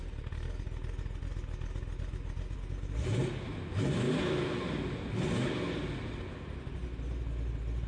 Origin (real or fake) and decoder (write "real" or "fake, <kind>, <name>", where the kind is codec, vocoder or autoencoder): real